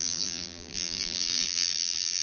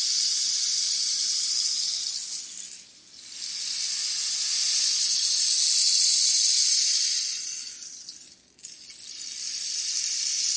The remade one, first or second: first